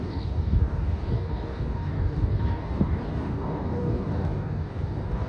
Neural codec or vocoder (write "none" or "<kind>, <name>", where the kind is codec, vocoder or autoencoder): codec, DAC